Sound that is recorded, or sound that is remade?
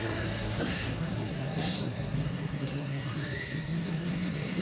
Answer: remade